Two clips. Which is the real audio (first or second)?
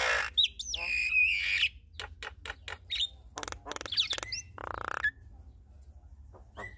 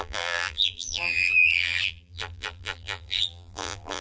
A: first